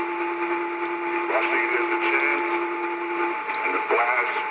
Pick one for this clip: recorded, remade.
recorded